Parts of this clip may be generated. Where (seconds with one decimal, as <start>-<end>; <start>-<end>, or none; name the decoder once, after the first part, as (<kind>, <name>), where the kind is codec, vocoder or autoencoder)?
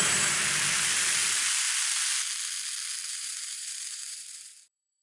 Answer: 0.0-0.4 (vocoder, BigVGAN v2); 3.1-5.0